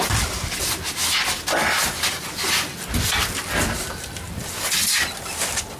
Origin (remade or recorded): recorded